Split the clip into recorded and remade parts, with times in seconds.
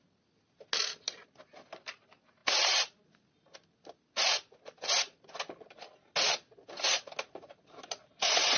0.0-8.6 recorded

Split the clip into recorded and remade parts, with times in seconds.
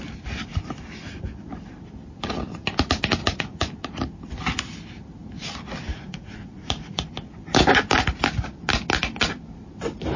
0.0-3.2 recorded; 3.2-3.7 remade; 3.7-5.9 recorded; 5.9-7.1 remade; 7.1-10.2 recorded